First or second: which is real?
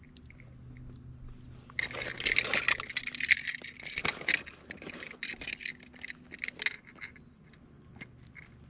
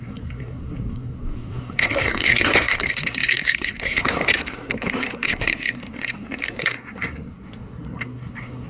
first